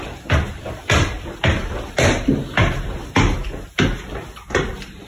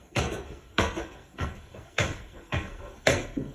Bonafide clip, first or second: first